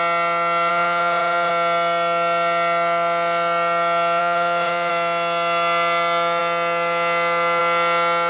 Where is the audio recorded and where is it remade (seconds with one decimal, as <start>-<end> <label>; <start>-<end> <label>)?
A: 0.0-0.7 recorded; 0.7-1.5 remade; 1.5-4.2 recorded; 4.2-4.9 remade; 4.9-8.3 recorded